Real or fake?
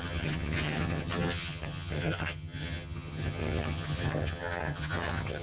fake